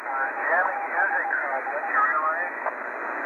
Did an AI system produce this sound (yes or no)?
no